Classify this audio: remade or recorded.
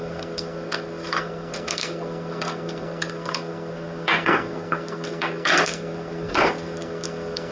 remade